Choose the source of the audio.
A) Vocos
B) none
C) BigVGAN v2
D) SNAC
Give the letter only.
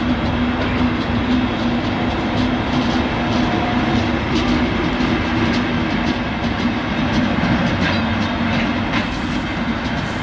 B